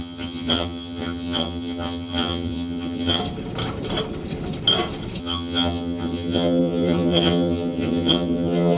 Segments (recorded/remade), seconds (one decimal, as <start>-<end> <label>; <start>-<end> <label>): 0.0-3.2 remade; 3.2-5.2 recorded; 5.2-8.8 remade